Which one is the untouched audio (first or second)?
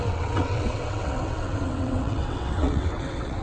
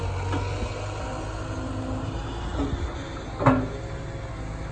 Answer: second